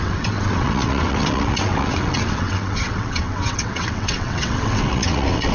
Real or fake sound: fake